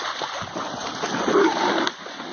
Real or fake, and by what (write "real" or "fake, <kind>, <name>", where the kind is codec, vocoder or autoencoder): real